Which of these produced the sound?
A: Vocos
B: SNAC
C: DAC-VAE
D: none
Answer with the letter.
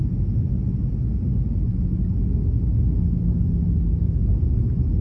D